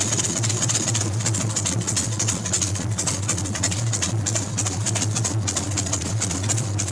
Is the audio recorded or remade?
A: remade